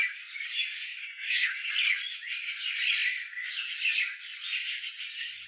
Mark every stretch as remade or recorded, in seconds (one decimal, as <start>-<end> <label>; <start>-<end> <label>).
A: 0.0-1.0 recorded; 1.0-1.7 remade; 1.7-5.5 recorded